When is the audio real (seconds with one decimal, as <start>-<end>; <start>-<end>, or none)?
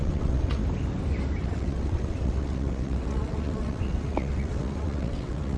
0.6-1.4